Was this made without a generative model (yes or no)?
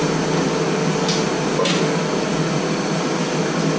yes